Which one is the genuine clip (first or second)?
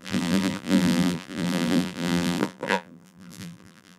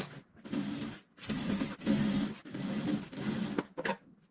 second